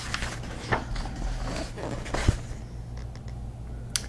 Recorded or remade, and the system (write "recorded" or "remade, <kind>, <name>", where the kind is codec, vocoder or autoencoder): recorded